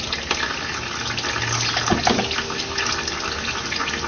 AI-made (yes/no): no